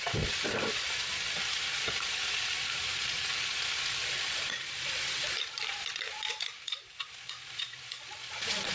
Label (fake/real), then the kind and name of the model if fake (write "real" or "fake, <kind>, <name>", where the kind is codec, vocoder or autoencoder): real